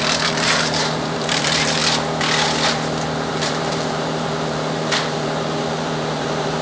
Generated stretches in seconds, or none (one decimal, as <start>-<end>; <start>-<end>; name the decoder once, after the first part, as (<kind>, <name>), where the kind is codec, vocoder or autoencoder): 0.0-1.8 (vocoder, BigVGAN v2); 3.3-6.6